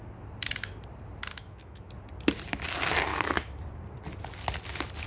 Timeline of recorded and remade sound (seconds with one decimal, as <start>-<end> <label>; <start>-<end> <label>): 0.0-1.3 recorded; 1.3-1.9 remade; 1.9-3.1 recorded; 3.1-3.6 remade; 3.6-5.1 recorded

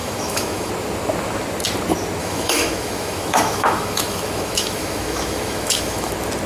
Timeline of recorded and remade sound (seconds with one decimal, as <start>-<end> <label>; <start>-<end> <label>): 0.0-0.7 remade; 0.7-2.2 recorded; 2.2-6.1 remade; 6.1-6.5 recorded

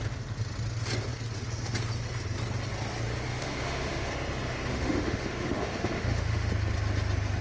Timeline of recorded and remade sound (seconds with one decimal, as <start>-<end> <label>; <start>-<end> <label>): 0.0-3.3 recorded; 3.3-4.1 remade; 4.1-4.7 recorded; 4.7-6.5 remade; 6.5-7.4 recorded

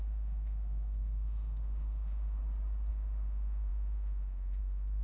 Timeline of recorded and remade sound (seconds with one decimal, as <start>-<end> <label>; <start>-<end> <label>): 0.0-2.4 remade; 2.4-2.9 recorded; 2.9-5.0 remade